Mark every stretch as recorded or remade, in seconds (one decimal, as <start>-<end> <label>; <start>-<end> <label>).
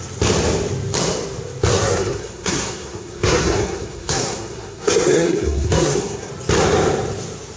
0.0-1.7 recorded; 1.7-6.3 remade; 6.3-7.6 recorded